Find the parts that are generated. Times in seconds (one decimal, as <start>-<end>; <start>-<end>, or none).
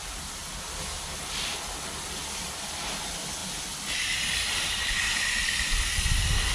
0.4-1.0; 2.2-2.8